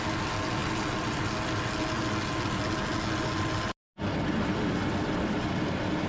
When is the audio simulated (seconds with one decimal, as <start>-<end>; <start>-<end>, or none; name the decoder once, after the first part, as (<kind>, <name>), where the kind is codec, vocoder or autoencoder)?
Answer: none